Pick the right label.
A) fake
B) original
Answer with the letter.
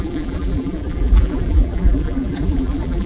A